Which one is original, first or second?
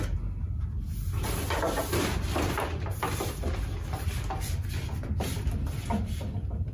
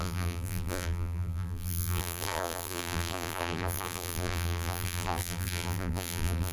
first